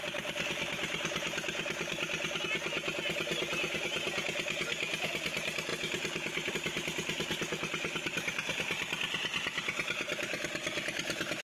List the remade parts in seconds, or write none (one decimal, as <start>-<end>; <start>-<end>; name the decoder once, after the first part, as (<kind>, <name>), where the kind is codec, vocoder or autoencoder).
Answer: 0.0-2.4 (vocoder, BigVGAN v2); 5.7-6.5